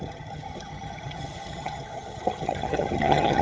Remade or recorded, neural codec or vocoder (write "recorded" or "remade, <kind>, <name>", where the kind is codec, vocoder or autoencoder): remade, vocoder, HiFi-GAN